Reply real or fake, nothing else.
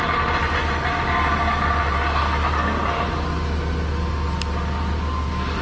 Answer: real